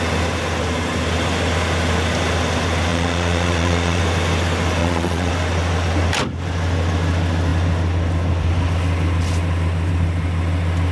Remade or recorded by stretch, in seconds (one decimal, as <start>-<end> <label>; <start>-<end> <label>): 0.0-2.9 recorded; 2.9-4.0 remade; 4.0-4.8 recorded; 4.8-5.3 remade; 5.3-10.9 recorded